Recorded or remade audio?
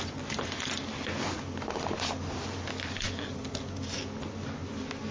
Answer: recorded